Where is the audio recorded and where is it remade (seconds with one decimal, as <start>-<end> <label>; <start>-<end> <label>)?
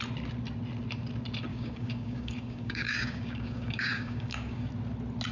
0.0-1.5 recorded; 1.5-4.7 remade; 4.7-5.3 recorded